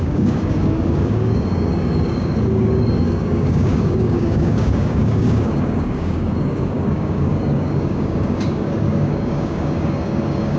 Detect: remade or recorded remade